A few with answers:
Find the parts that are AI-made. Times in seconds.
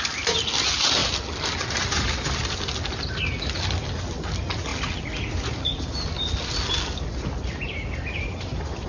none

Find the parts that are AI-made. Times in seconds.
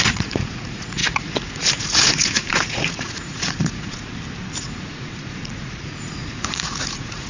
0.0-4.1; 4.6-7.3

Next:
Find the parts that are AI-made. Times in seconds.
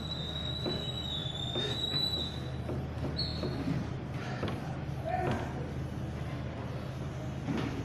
1.2-2.4; 3.3-4.9